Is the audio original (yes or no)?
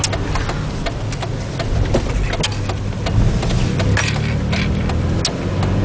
yes